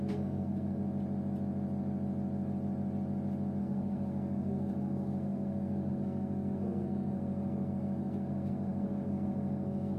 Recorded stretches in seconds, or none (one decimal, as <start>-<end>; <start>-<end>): 0.8-3.6